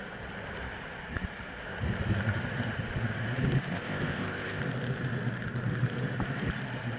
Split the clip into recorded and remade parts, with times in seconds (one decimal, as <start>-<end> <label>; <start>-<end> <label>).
0.0-3.7 recorded; 3.7-4.6 remade; 4.6-7.0 recorded